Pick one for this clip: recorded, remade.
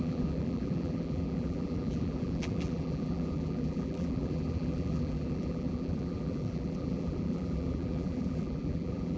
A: remade